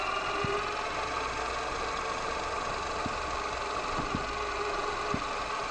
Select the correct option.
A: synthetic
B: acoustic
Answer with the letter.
B